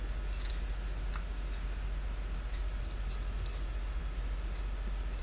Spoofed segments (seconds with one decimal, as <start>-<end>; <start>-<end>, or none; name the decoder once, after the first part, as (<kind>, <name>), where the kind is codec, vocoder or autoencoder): none